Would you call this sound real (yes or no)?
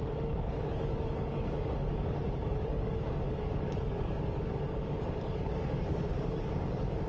no